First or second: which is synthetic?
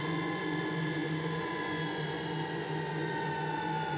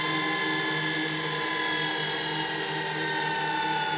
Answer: first